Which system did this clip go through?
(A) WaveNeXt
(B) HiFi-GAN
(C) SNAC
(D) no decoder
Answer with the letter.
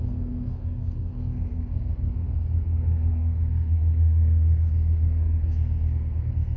C